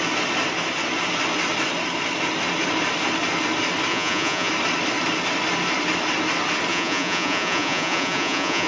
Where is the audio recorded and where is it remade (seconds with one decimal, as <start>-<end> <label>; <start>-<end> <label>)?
0.0-3.9 recorded; 3.9-4.5 remade; 4.5-6.7 recorded; 6.7-8.7 remade